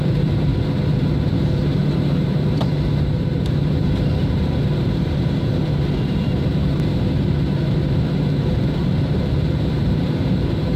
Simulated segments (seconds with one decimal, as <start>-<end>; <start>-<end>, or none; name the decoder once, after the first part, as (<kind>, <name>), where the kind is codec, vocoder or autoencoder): 0.0-0.5 (vocoder, BigVGAN v2); 1.5-10.8